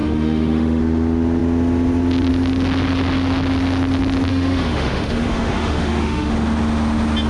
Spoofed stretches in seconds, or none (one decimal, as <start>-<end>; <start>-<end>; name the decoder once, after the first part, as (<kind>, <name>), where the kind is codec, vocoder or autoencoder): 0.0-0.8 (autoencoder, DAC-VAE); 4.3-6.3